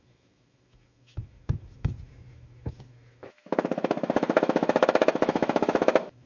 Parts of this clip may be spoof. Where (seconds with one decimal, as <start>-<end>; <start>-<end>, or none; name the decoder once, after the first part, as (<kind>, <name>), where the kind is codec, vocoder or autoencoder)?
0.0-6.3 (autoencoder, DAC-VAE)